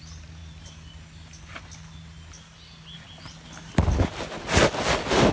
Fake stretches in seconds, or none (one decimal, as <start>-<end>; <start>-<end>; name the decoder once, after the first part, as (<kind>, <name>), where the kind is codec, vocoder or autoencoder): none